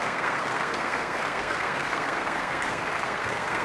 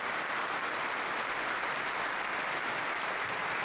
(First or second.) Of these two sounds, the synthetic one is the first